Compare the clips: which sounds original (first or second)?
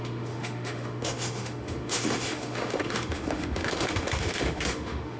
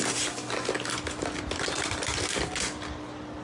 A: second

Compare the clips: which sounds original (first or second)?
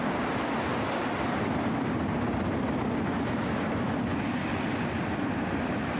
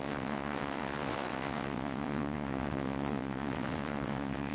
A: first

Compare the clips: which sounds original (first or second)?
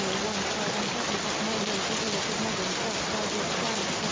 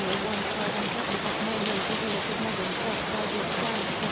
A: first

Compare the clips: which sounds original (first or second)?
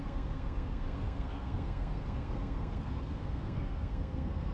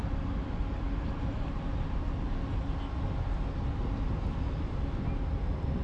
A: second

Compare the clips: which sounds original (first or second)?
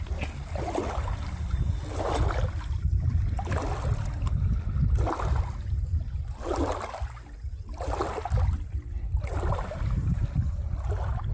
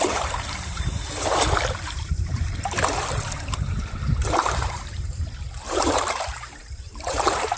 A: first